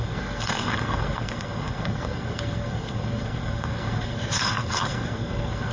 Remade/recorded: remade